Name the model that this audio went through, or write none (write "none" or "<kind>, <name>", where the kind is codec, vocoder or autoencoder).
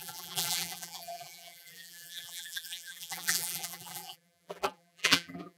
vocoder, BigVGAN v2